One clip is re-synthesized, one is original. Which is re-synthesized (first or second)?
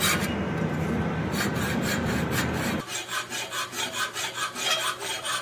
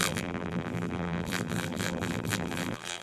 second